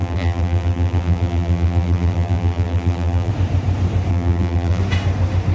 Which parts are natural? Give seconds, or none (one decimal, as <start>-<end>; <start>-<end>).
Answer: 3.3-4.1; 4.8-5.5